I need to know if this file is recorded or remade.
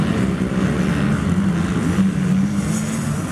recorded